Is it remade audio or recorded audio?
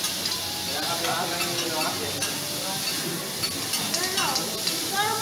recorded